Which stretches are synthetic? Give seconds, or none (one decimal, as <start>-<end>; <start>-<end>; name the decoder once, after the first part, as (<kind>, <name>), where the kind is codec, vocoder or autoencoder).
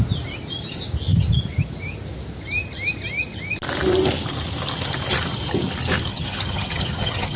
6.1-7.4 (vocoder, HiFi-GAN)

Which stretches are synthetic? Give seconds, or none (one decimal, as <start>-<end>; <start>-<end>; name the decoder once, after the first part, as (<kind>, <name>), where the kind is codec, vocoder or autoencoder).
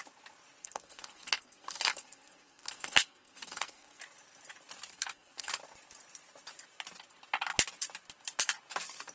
0.6-4.0 (codec, SNAC); 4.9-5.5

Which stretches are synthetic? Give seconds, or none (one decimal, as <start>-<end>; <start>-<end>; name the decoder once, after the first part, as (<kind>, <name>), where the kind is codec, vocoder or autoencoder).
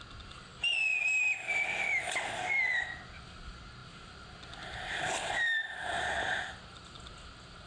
none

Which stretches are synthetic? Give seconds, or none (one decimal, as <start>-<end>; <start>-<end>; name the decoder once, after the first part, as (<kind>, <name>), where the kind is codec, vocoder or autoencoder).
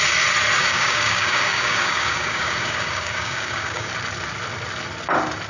0.6-3.9 (codec, DAC)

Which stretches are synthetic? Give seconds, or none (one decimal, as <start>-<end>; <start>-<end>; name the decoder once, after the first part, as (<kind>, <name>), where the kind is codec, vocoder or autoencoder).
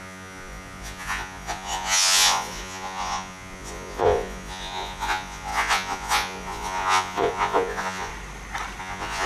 0.0-8.1 (vocoder, Vocos); 8.8-9.3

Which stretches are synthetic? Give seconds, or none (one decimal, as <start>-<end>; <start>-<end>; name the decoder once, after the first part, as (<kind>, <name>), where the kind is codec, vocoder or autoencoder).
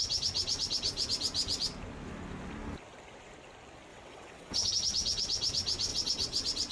3.9-4.7 (vocoder, WaveNeXt); 5.9-6.7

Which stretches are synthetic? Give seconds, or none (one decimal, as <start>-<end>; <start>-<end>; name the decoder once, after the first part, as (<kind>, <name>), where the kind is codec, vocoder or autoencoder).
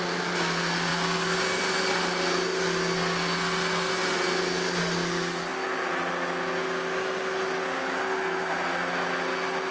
none